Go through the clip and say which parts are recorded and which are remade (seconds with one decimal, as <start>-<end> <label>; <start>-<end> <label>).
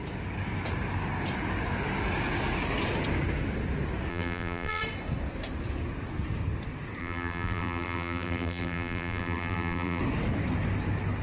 0.0-4.1 recorded; 4.1-4.8 remade; 4.8-7.0 recorded; 7.0-10.0 remade; 10.0-11.2 recorded